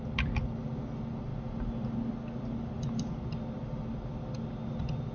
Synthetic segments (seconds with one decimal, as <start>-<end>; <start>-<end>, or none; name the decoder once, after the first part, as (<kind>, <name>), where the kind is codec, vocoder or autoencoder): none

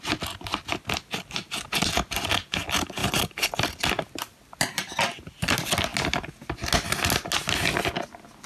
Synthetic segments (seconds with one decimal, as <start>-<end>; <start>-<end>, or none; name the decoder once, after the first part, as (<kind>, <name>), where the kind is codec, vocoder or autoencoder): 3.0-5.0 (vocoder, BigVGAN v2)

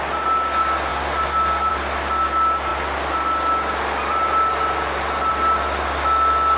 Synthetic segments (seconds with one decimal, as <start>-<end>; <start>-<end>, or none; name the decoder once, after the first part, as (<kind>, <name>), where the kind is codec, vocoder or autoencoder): none